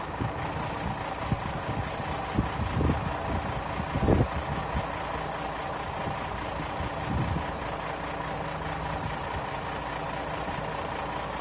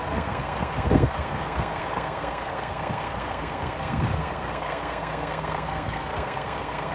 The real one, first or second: first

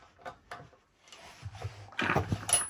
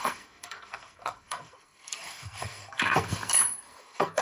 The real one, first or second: first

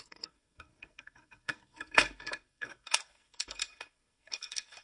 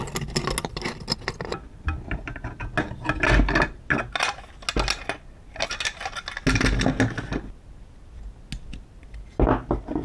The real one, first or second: second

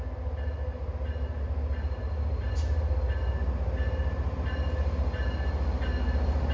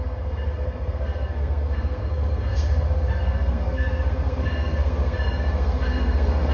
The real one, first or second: first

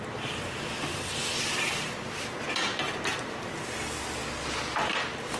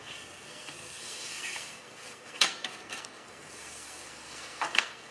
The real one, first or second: first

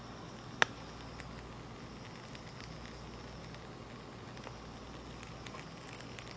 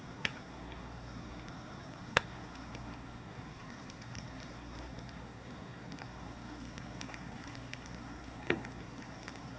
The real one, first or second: first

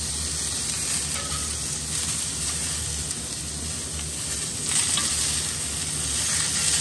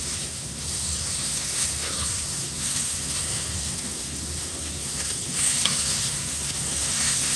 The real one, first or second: first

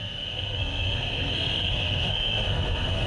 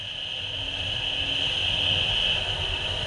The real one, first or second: second